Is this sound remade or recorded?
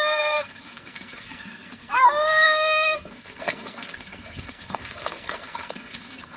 remade